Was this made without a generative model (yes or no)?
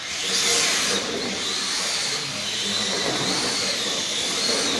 yes